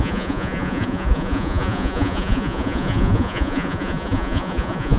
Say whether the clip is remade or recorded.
remade